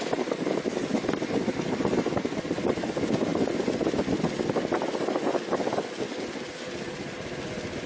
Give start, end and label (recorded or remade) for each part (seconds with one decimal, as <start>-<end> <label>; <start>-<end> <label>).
0.0-7.9 recorded